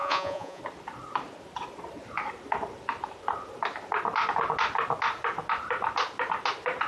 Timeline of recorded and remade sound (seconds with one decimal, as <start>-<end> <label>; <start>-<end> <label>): 0.0-0.6 remade; 0.6-6.9 recorded